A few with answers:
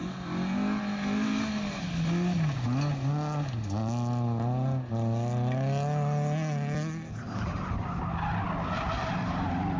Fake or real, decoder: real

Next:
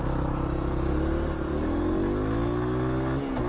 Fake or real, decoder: real